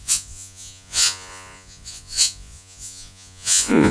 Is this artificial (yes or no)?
yes